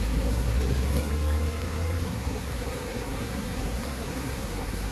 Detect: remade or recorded remade